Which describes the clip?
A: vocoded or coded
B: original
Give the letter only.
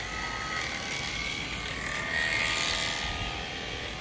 B